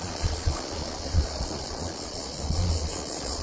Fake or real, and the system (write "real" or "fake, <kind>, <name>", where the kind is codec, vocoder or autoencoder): fake, vocoder, Vocos